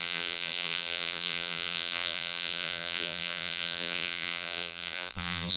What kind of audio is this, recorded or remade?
remade